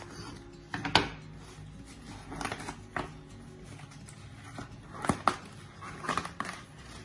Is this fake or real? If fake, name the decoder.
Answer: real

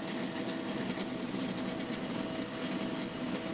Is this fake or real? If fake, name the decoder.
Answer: real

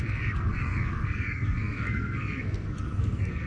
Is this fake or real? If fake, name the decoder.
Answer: fake, codec, SNAC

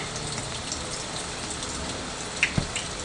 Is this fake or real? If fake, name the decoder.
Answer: real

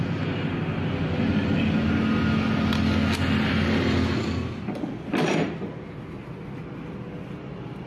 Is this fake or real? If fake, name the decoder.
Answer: real